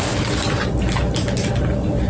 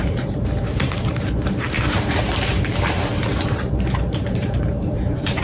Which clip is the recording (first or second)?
first